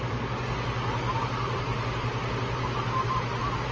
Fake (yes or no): no